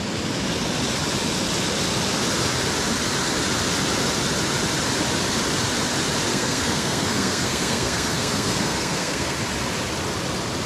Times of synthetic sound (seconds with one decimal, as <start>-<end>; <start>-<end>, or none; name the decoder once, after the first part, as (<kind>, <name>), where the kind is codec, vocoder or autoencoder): 6.3-9.4 (codec, SNAC)